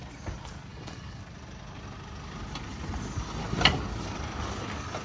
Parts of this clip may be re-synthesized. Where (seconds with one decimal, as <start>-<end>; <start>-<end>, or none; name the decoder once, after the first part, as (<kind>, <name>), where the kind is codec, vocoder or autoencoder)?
0.7-1.2 (codec, DAC)